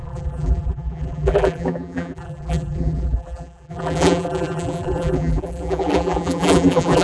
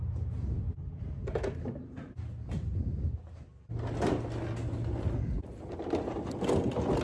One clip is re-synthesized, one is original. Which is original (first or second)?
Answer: second